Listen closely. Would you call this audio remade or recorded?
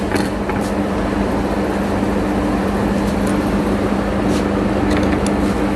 recorded